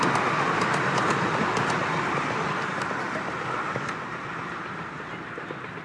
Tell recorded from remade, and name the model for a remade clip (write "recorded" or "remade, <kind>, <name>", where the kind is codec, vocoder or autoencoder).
recorded